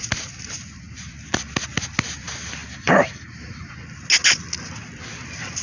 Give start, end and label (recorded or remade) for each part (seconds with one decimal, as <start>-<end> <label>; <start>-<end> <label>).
0.0-2.6 recorded; 2.6-3.7 remade; 3.7-5.6 recorded